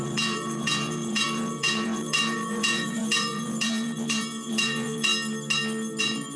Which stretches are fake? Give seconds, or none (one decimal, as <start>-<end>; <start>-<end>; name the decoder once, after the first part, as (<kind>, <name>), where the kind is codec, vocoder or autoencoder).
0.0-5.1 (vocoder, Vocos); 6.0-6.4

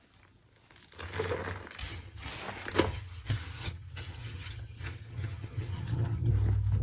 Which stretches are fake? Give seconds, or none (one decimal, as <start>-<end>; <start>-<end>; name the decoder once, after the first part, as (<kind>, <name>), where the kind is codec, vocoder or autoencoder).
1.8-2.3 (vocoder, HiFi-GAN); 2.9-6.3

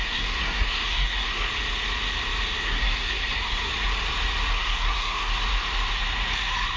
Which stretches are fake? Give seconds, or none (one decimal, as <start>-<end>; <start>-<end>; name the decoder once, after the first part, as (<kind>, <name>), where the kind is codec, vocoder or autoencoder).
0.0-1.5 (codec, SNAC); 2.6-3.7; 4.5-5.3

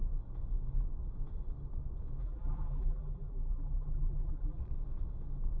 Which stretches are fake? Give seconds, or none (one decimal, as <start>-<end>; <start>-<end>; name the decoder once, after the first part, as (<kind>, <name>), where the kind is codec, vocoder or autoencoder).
2.2-4.6 (vocoder, BigVGAN v2)

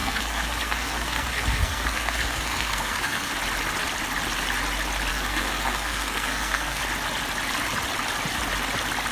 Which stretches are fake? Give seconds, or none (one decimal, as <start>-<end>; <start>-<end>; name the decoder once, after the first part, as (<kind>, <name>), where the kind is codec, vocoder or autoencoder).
0.0-3.3 (codec, SNAC); 5.1-6.8

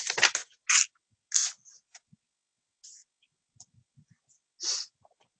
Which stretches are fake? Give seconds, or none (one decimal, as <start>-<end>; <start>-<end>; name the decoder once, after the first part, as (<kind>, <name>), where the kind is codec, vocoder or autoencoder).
none

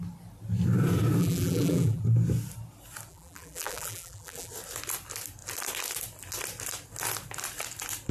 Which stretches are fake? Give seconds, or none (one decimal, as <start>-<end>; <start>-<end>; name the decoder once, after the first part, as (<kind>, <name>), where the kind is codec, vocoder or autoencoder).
1.2-2.0 (vocoder, BigVGAN v2); 3.1-4.5